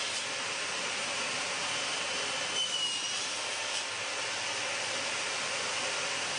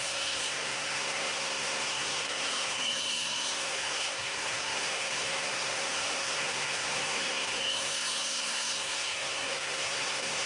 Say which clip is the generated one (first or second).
second